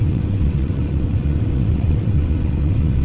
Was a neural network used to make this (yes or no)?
yes